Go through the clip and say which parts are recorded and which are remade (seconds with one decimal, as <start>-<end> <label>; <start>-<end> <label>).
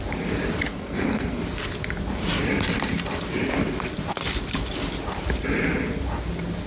0.0-0.7 recorded; 0.7-1.4 remade; 1.4-6.7 recorded